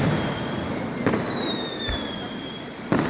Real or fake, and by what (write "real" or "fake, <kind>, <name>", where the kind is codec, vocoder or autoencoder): real